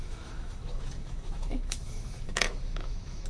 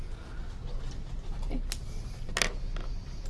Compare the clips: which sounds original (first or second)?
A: second